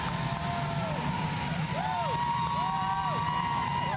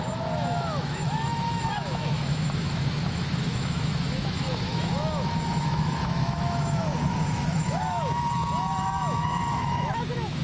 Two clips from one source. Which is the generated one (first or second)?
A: second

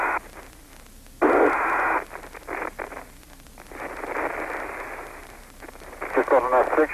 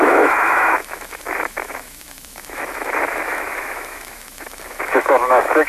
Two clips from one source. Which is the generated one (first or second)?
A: second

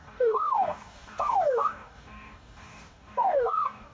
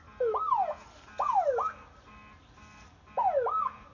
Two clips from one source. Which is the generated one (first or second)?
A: first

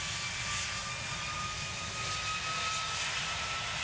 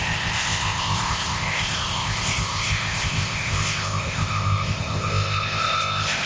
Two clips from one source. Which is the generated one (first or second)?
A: second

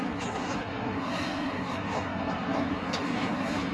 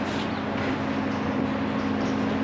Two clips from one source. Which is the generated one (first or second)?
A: first